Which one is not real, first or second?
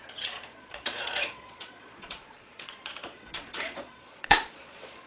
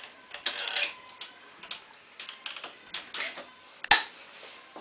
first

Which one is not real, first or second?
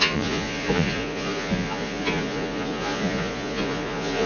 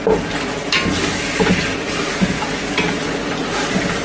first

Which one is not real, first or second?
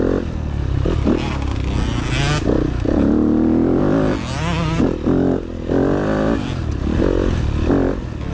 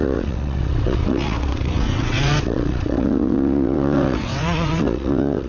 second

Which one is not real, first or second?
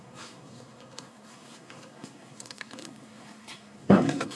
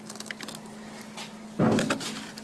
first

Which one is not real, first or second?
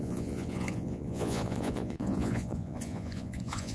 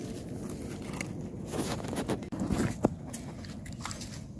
first